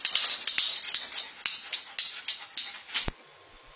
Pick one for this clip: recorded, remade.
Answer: recorded